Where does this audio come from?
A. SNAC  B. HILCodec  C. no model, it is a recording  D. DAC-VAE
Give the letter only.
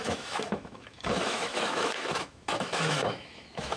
D